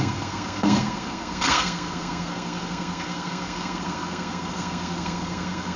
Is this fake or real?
fake